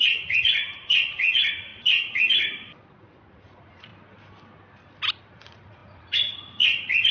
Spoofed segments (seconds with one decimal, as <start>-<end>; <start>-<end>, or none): 0.0-1.7; 2.9-3.9; 5.1-7.1